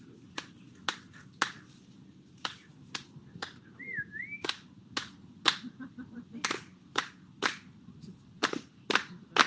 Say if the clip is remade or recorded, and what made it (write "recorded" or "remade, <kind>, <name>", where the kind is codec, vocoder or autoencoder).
recorded